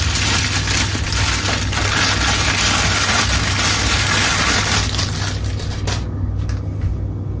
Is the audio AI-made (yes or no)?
no